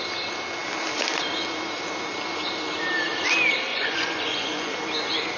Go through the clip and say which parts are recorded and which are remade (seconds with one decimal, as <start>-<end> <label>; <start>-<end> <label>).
0.0-3.7 recorded; 3.7-4.7 remade; 4.7-5.4 recorded